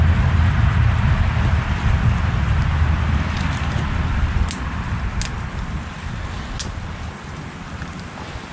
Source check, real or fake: real